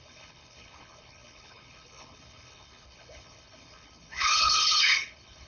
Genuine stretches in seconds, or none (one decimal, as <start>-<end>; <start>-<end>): none